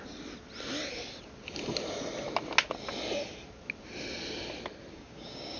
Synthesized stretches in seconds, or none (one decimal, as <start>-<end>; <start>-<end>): 4.9-5.6